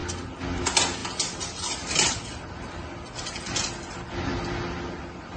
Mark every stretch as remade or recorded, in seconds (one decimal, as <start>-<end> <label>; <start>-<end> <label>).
0.0-5.4 recorded

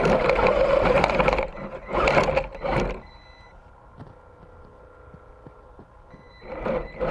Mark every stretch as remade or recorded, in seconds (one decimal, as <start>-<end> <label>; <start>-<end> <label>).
0.0-7.1 recorded

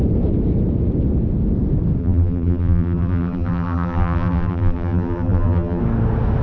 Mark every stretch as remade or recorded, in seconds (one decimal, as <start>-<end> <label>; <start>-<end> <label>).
0.0-2.0 recorded; 2.0-5.8 remade; 5.8-6.4 recorded

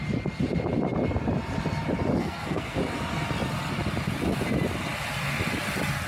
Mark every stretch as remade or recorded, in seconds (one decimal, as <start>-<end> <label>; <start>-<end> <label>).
0.0-2.2 recorded; 2.2-2.8 remade; 2.8-6.1 recorded

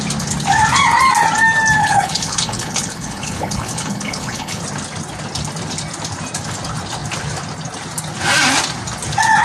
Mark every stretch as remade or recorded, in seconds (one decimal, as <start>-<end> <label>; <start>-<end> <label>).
0.0-1.8 recorded; 1.8-4.6 remade; 4.6-9.4 recorded

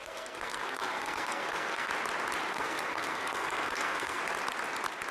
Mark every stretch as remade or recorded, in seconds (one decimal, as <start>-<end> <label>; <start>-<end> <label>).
0.0-1.9 remade; 1.9-2.5 recorded; 2.5-4.2 remade; 4.2-5.1 recorded